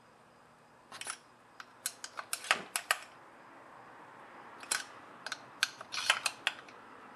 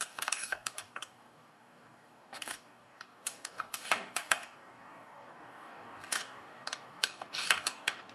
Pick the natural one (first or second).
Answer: first